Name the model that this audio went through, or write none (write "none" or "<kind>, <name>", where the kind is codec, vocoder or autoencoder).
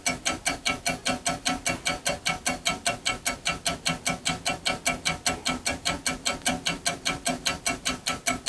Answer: none